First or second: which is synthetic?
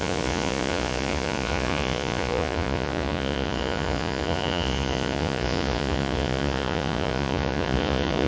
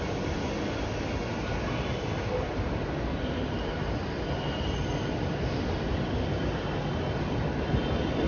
first